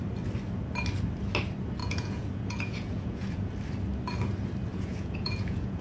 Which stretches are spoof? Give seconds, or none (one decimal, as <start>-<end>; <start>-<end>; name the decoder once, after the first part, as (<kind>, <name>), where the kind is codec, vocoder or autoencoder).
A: 1.8-3.5 (vocoder, Vocos); 4.7-5.8